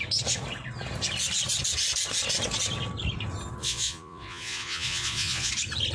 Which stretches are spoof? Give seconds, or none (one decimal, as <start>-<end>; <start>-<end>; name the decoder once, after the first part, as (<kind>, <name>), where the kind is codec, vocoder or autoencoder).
3.6-5.5 (vocoder, Vocos)